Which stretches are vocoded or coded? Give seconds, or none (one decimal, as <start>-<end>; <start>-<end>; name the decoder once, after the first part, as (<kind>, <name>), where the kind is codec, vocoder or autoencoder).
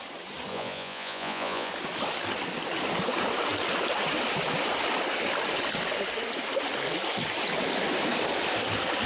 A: 0.5-1.7 (vocoder, Vocos)